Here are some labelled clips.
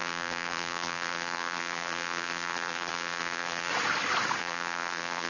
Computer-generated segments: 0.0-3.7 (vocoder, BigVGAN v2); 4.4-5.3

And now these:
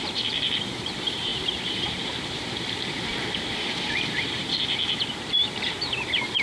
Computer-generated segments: 0.0-6.4 (vocoder, BigVGAN v2)

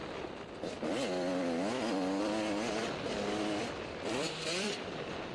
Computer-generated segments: 2.2-2.8 (vocoder, BigVGAN v2); 3.6-5.3

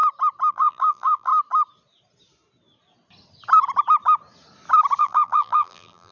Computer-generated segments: 0.5-1.3 (vocoder, BigVGAN v2); 5.0-6.1

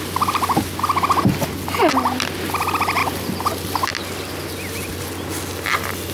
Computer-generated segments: none

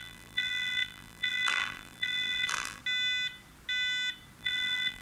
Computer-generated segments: 0.0-2.8 (vocoder, BigVGAN v2); 4.4-5.0

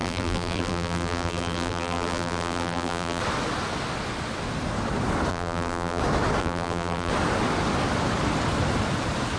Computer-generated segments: 0.0-3.2 (vocoder, BigVGAN v2); 5.3-6.0; 6.4-7.1

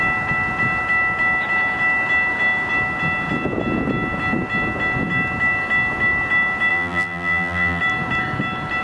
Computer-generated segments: 6.7-7.8 (vocoder, BigVGAN v2)